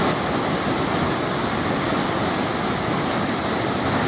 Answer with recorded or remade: recorded